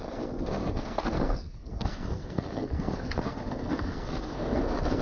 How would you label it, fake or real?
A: fake